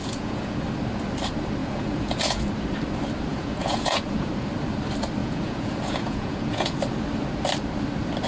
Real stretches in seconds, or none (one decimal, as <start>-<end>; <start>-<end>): 0.6-1.6; 2.5-3.3; 4.3-5.2; 6.8-8.3